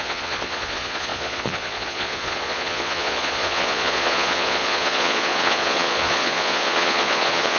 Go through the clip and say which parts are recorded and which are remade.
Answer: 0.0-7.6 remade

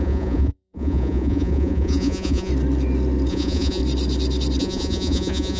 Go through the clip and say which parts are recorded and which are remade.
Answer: 0.0-2.5 remade; 2.5-3.3 recorded; 3.3-3.8 remade; 3.8-4.6 recorded; 4.6-5.6 remade

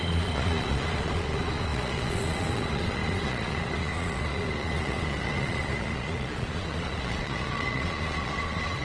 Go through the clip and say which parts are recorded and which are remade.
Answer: 0.0-8.8 remade

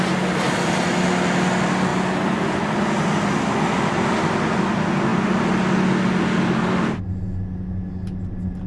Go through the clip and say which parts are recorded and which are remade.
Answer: 0.0-8.7 recorded

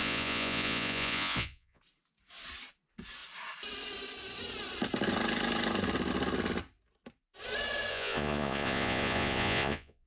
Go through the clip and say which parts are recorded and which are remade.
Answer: 0.0-1.8 remade; 1.8-7.9 recorded; 7.9-10.1 remade